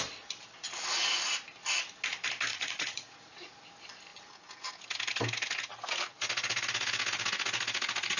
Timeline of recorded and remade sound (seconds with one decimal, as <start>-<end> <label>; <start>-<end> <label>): 0.0-2.5 recorded; 2.5-3.6 remade; 3.6-8.2 recorded